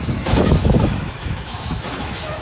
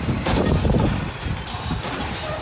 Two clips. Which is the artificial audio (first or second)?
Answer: first